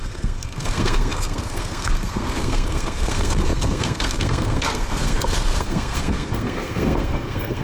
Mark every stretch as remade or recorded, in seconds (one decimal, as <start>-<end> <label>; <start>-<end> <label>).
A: 0.0-7.6 remade

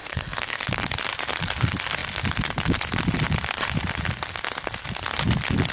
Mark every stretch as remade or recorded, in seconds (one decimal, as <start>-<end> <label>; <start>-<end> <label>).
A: 0.0-0.6 remade; 0.6-5.7 recorded

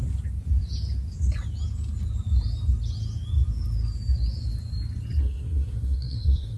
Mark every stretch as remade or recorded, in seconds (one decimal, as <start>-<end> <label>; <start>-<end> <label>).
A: 0.0-5.2 recorded; 5.2-6.6 remade

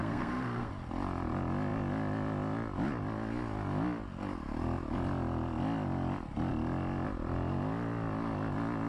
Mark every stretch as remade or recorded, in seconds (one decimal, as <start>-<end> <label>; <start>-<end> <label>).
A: 0.0-0.7 remade; 0.7-8.9 recorded

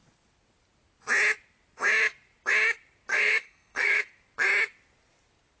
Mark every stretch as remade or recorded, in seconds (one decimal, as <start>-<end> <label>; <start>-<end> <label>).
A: 0.0-3.1 recorded; 3.1-4.0 remade; 4.0-5.6 recorded